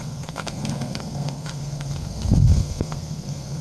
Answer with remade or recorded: remade